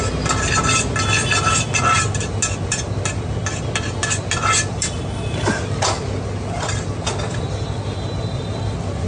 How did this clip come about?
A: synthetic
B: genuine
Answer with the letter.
B